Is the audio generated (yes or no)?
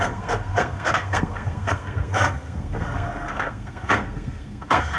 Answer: yes